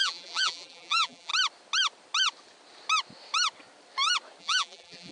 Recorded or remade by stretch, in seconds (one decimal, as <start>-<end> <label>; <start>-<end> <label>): 0.0-1.3 remade; 1.3-4.4 recorded; 4.4-5.1 remade